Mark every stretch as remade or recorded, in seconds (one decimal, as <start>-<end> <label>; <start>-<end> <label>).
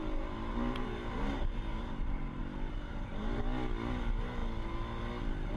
0.0-2.4 remade; 2.4-2.9 recorded; 2.9-3.4 remade; 3.4-5.6 recorded